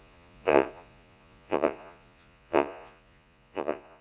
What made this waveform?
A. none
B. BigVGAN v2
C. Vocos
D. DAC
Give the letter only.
C